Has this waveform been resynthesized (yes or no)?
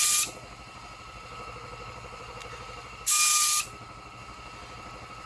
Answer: no